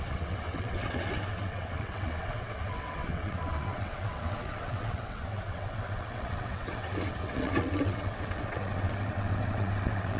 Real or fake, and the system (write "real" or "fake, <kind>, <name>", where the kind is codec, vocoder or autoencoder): fake, vocoder, WaveNeXt